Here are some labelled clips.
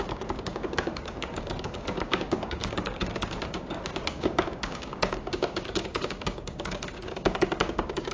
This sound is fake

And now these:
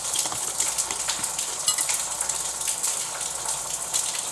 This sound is real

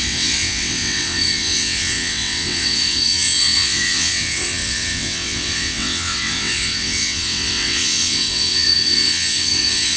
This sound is fake